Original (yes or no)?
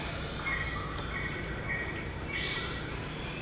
no